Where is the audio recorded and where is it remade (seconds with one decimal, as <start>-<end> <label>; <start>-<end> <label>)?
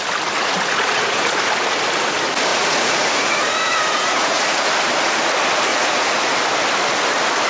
0.0-0.4 recorded; 0.4-1.5 remade; 1.5-2.5 recorded; 2.5-4.7 remade; 4.7-5.7 recorded; 5.7-6.3 remade; 6.3-7.5 recorded